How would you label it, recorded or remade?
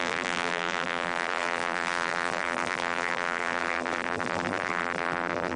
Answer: remade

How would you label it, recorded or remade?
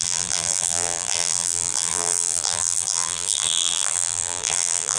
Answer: remade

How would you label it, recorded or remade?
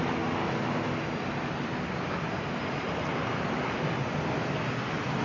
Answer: recorded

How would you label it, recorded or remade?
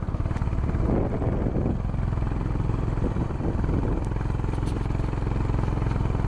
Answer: recorded